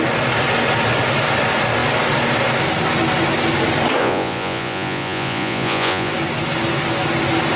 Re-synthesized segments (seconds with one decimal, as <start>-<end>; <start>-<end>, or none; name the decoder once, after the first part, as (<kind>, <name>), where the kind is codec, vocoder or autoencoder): 4.0-6.1 (vocoder, Vocos)